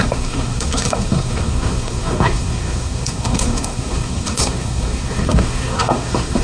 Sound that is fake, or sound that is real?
fake